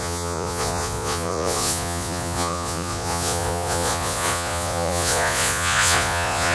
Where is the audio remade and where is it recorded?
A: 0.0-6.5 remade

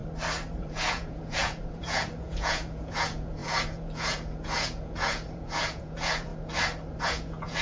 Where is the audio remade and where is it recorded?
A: 0.0-0.6 recorded; 0.6-6.3 remade; 6.3-7.0 recorded; 7.0-7.6 remade

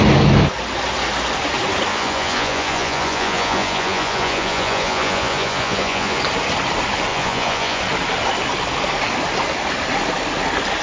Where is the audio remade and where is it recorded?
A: 0.0-1.9 recorded; 1.9-6.2 remade; 6.2-7.1 recorded; 7.1-7.8 remade; 7.8-10.8 recorded

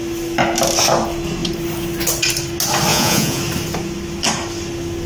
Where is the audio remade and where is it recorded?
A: 0.0-2.9 recorded; 2.9-3.4 remade; 3.4-5.1 recorded

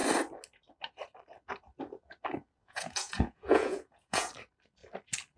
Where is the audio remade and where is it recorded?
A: 0.0-2.6 recorded; 2.6-4.3 remade; 4.3-5.4 recorded